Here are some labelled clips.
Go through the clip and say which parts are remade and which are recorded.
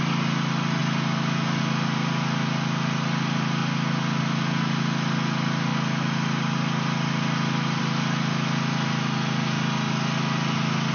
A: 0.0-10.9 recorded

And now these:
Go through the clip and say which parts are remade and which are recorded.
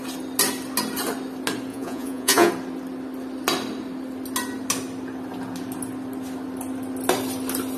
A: 0.0-1.7 recorded; 1.7-2.5 remade; 2.5-7.8 recorded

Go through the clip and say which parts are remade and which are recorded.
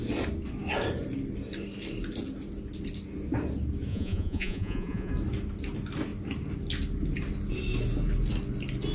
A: 0.0-3.9 recorded; 3.9-5.1 remade; 5.1-8.9 recorded